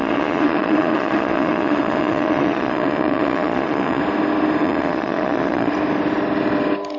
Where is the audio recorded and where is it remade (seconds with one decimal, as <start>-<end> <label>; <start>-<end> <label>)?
0.0-4.0 remade; 4.0-4.6 recorded; 4.6-5.7 remade; 5.7-7.0 recorded